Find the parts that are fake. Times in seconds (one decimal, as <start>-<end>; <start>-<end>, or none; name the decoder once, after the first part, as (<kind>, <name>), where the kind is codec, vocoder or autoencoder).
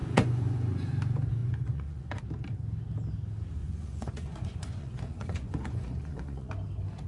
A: 0.0-0.9 (vocoder, Vocos); 1.4-2.2; 3.6-6.5